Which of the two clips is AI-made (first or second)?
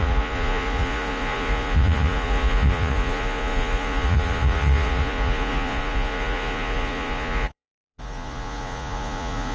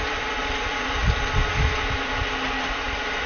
first